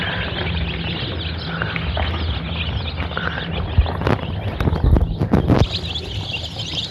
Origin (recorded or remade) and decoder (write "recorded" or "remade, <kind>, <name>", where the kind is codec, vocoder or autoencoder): recorded